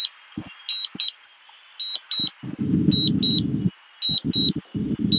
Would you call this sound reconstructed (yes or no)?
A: no